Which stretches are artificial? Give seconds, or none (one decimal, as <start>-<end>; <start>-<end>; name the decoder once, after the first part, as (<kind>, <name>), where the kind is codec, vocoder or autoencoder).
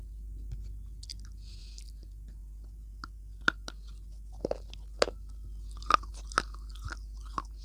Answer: none